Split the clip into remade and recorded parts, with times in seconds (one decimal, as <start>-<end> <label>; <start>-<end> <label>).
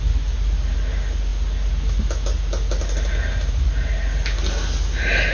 0.0-5.3 recorded